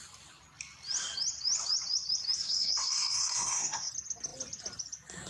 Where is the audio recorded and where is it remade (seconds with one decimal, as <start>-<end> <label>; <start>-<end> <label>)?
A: 0.0-2.4 recorded; 2.4-3.9 remade; 3.9-5.3 recorded